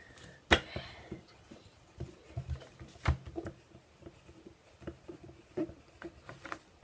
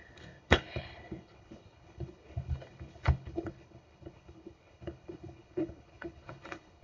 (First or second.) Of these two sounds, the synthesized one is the second